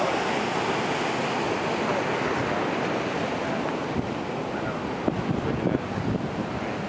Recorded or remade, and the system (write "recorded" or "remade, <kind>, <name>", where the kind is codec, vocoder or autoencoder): recorded